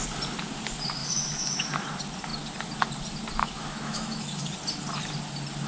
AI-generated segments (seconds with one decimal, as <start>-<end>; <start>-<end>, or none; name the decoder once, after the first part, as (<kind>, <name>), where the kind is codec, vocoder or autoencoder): 1.0-1.7 (autoencoder, DAC-VAE); 3.4-4.4